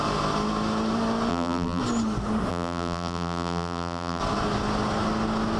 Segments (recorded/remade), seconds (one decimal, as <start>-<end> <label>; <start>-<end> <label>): 0.0-1.3 recorded; 1.3-1.8 remade; 1.8-2.5 recorded; 2.5-4.2 remade; 4.2-5.6 recorded